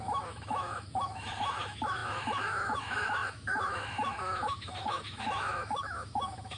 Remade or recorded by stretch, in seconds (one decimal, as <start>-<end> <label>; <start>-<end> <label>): 0.0-6.6 remade